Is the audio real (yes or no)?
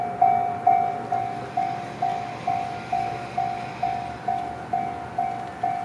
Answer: yes